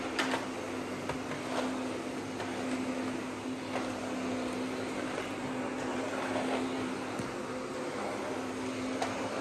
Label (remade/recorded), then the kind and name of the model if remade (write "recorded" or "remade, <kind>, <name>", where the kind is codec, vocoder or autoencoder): recorded